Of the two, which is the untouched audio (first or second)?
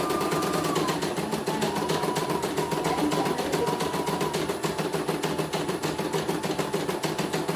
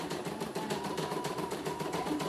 first